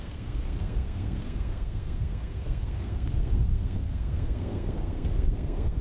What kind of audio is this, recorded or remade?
remade